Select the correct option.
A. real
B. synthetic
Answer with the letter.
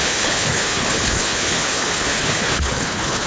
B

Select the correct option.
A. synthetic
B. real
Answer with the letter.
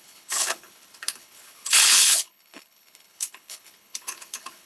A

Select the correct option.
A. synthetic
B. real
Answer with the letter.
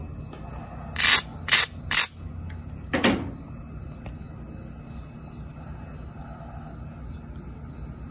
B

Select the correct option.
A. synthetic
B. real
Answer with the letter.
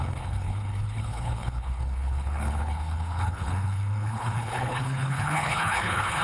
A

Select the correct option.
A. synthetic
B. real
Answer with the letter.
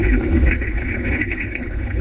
A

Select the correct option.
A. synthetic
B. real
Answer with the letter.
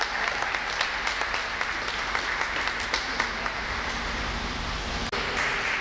B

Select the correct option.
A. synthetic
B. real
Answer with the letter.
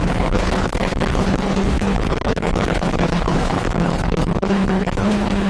A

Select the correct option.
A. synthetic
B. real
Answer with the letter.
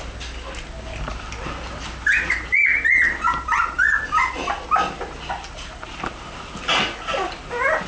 B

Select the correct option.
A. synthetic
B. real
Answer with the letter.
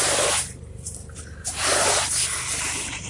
B